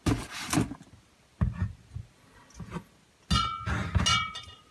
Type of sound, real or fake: real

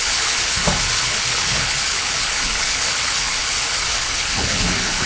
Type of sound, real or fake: fake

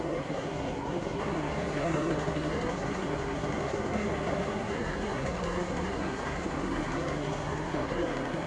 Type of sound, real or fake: fake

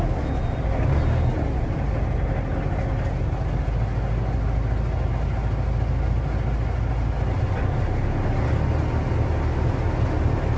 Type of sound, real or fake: real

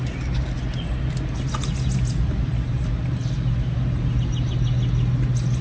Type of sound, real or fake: real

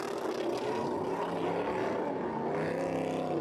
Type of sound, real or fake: real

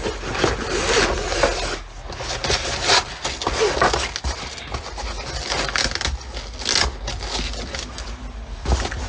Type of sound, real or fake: real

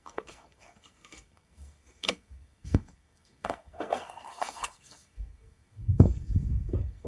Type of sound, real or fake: fake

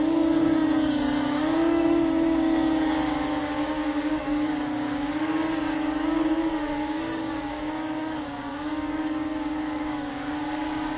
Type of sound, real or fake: fake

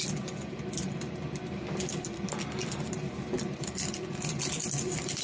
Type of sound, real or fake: real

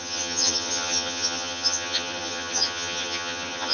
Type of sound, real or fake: fake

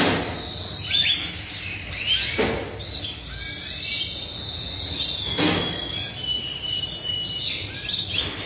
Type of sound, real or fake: real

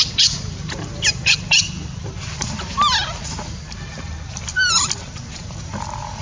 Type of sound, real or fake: fake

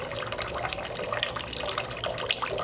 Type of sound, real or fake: real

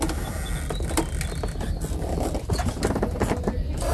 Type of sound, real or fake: real